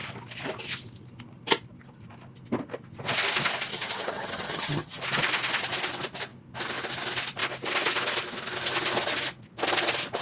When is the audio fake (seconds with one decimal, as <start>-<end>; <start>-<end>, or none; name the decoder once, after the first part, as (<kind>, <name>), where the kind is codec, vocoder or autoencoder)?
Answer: 3.7-5.0 (vocoder, HiFi-GAN)